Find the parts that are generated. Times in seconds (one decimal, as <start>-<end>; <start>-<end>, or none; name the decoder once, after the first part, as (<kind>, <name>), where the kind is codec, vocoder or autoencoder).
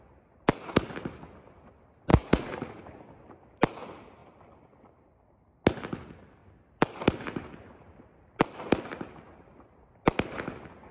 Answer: 2.1-2.8 (vocoder, Vocos)